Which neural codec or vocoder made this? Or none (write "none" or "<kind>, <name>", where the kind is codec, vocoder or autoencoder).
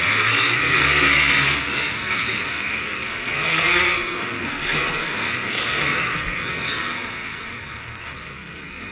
codec, SNAC